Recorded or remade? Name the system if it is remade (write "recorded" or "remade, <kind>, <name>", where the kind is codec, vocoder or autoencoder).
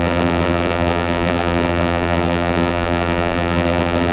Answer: remade, vocoder, BigVGAN v2